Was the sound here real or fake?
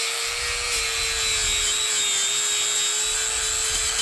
real